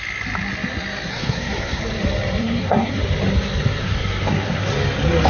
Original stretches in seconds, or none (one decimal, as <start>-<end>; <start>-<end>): 0.0-1.1; 1.8-2.4; 3.0-3.8; 4.7-5.3